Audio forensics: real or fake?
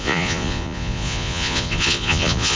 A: fake